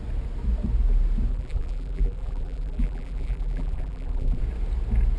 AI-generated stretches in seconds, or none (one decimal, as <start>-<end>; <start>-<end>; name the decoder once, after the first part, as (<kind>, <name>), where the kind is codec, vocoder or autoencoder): 1.3-4.4 (vocoder, BigVGAN v2)